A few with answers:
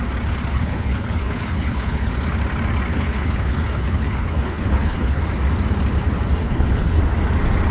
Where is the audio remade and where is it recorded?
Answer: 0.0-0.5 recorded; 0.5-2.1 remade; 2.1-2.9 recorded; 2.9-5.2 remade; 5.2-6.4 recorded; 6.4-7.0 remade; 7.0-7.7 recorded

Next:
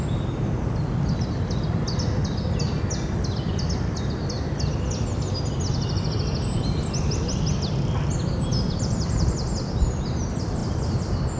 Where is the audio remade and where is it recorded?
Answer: 0.0-11.4 recorded

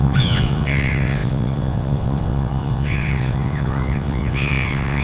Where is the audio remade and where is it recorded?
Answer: 0.0-5.0 remade

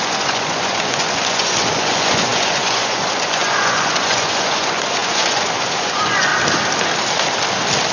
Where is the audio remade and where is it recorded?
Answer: 0.0-6.3 remade; 6.3-7.9 recorded

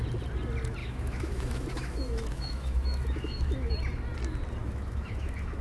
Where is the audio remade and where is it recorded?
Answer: 0.0-0.8 recorded; 0.8-3.7 remade; 3.7-4.6 recorded; 4.6-5.6 remade

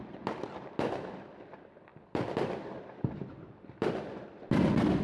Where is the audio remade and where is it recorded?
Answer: 0.0-5.0 remade